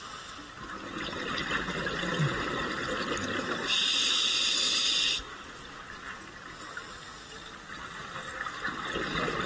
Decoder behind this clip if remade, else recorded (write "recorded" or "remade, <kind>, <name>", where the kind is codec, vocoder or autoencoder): recorded